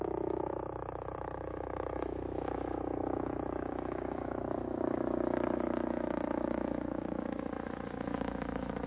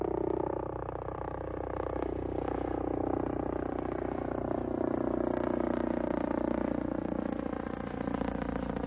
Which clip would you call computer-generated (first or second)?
first